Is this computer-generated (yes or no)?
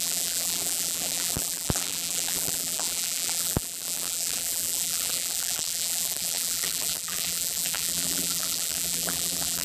yes